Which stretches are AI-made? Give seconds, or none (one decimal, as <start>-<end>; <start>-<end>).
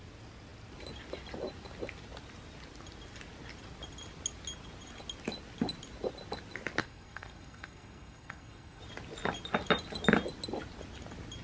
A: 6.8-8.8